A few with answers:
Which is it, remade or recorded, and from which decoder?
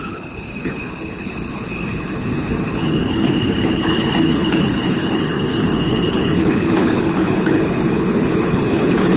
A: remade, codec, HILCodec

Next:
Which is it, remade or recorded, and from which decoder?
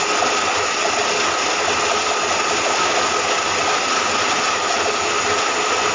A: recorded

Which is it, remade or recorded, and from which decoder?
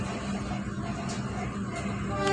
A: recorded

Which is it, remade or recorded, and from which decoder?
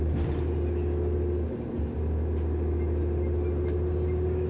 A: recorded